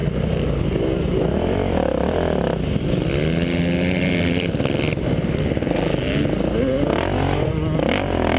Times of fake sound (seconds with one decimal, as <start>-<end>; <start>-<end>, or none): none